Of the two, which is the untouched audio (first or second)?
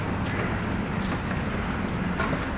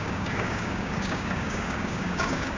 first